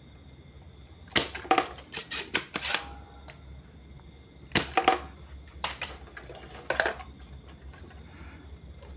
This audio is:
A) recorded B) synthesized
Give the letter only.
A